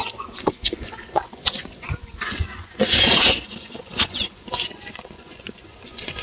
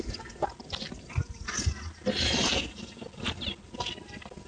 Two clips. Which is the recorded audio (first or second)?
second